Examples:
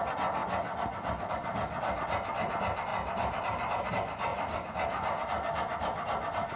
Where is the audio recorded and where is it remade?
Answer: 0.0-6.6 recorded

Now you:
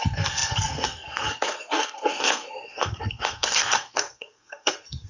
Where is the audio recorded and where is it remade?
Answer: 0.0-5.1 remade

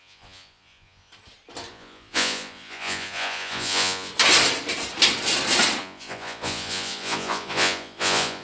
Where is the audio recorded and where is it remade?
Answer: 0.0-1.1 remade; 1.1-1.7 recorded; 1.7-4.1 remade; 4.1-5.8 recorded; 5.8-8.4 remade

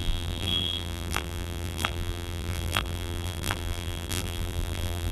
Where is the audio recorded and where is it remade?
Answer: 0.0-5.1 remade

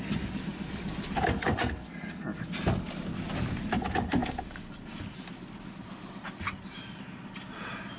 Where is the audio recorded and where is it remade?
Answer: 0.0-8.0 recorded

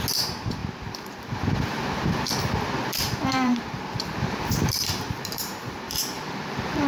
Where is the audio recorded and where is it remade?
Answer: 0.0-0.6 recorded; 0.6-2.3 remade; 2.3-3.3 recorded; 3.3-6.9 remade

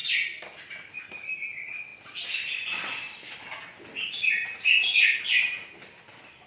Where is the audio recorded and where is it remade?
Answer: 0.0-6.5 recorded